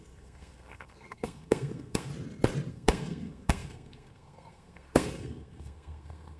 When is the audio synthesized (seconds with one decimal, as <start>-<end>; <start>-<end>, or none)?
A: 0.0-2.1; 2.7-6.4